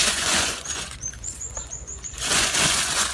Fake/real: fake